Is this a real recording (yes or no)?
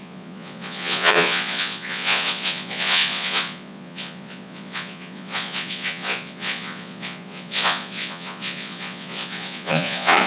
no